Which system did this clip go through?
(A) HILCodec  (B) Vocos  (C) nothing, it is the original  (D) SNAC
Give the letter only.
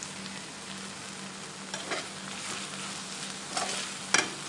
C